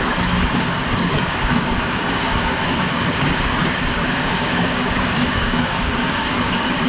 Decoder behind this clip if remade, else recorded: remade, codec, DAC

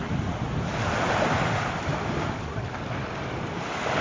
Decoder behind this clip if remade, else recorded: recorded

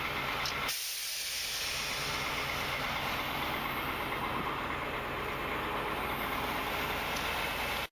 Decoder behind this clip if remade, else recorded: recorded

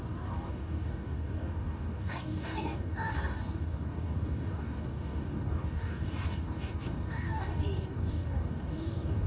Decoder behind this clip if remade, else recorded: remade, codec, DAC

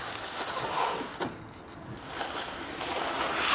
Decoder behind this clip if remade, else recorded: recorded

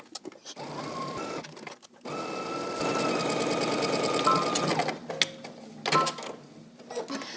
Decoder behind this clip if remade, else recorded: recorded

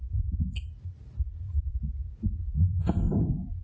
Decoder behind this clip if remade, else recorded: recorded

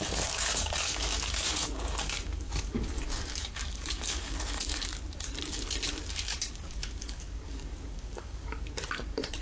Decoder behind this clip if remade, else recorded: remade, codec, DAC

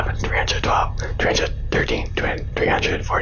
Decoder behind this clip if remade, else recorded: recorded